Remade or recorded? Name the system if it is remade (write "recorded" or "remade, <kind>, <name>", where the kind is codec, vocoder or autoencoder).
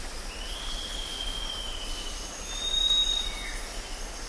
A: recorded